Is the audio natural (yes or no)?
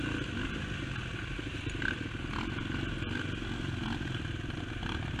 yes